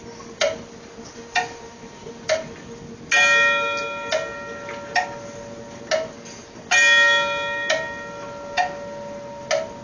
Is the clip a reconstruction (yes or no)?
no